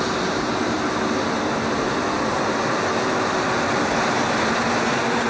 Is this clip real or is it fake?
real